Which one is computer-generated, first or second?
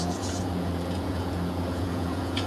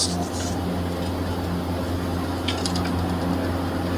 first